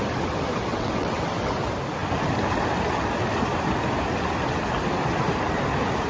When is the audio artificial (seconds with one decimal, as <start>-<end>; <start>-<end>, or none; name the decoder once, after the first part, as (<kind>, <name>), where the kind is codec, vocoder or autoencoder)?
0.7-1.4 (vocoder, WaveNeXt)